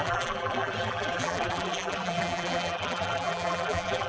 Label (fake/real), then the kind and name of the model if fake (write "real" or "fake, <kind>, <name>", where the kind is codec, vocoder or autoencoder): fake, vocoder, BigVGAN v2